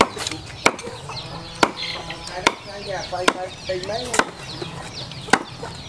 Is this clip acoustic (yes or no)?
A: yes